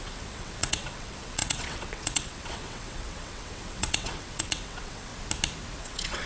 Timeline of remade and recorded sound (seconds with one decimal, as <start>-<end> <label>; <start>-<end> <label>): 0.0-5.1 remade; 5.1-5.8 recorded; 5.8-6.3 remade

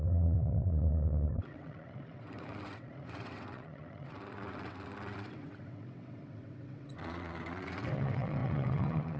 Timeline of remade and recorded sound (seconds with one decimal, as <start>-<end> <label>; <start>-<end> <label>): 0.0-9.2 remade

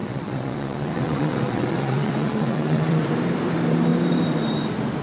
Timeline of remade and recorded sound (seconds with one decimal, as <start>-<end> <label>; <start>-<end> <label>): 0.0-3.0 remade; 3.0-5.0 recorded

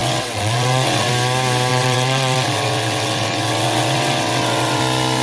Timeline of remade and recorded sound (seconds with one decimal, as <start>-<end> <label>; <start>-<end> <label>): 0.0-1.1 remade; 1.1-1.7 recorded; 1.7-4.8 remade; 4.8-5.2 recorded

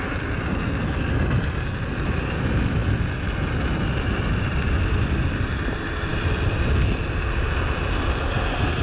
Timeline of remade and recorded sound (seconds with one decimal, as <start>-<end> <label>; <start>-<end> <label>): 0.0-8.8 recorded